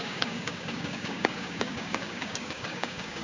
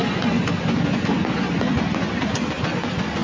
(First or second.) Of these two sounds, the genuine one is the second